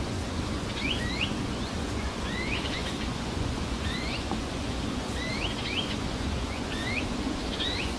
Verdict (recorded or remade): remade